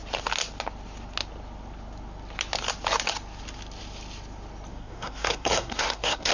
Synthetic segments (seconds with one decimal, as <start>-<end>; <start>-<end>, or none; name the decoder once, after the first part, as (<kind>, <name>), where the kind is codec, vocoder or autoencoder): 4.7-6.3 (codec, SNAC)